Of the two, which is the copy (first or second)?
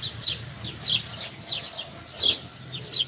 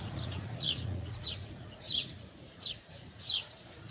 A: second